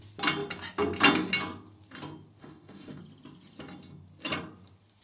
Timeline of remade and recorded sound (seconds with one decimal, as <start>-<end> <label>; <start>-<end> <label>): 0.0-2.4 recorded; 2.4-3.0 remade; 3.0-5.0 recorded